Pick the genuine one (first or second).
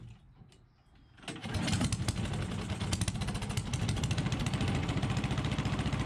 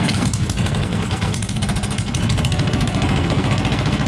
first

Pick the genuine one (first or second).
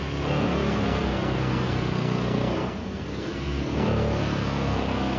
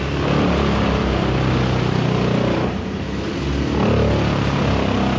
second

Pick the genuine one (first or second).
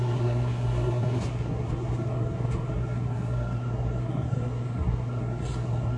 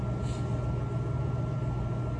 second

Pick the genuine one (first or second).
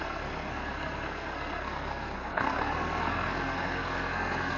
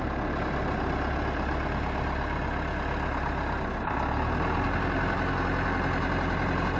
second